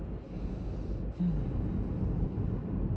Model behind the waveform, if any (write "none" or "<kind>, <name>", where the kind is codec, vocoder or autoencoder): none